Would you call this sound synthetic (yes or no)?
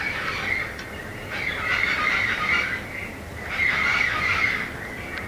yes